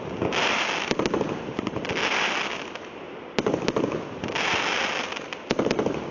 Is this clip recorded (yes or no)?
yes